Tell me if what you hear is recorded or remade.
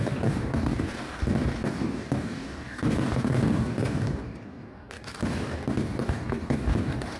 remade